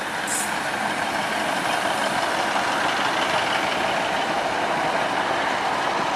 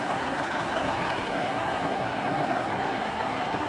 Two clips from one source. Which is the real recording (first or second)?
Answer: first